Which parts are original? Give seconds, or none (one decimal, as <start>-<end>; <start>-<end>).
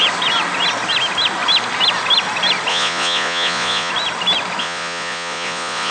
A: 0.0-2.7; 3.9-4.6